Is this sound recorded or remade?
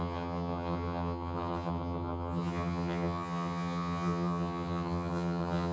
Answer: remade